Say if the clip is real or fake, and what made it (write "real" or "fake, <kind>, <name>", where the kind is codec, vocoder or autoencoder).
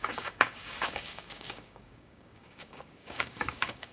fake, codec, DAC